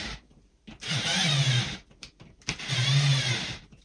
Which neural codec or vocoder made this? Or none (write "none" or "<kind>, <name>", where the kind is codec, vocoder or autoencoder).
none